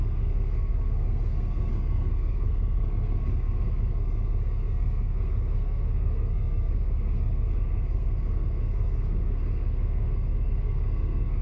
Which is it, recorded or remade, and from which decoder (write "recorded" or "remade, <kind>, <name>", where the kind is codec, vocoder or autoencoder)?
remade, codec, SNAC